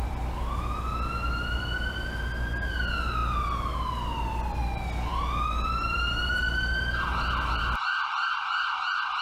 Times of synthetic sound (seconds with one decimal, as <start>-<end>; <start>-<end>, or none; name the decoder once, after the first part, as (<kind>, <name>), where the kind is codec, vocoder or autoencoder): none